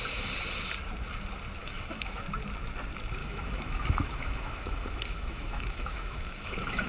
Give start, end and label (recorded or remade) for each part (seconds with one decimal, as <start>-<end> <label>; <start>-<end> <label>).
0.0-1.6 recorded; 1.6-2.2 remade; 2.2-3.2 recorded; 3.2-6.9 remade